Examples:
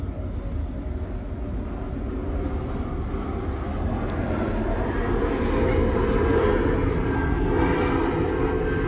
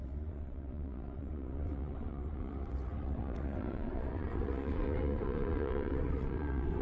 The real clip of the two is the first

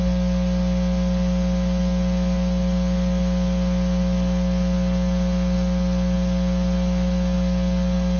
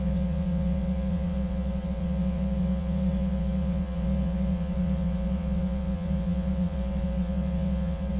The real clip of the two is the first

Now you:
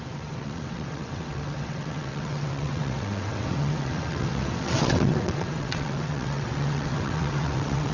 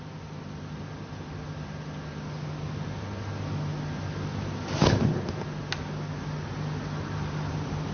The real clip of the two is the second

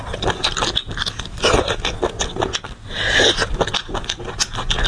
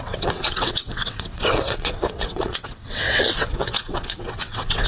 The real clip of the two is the first